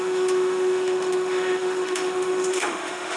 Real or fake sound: fake